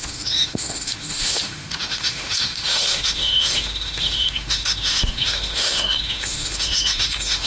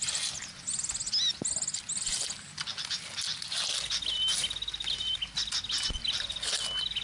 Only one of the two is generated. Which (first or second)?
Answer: first